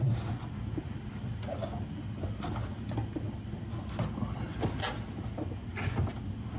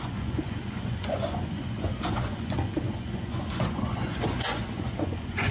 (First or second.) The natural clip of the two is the first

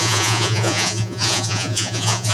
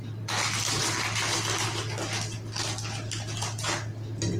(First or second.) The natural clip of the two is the second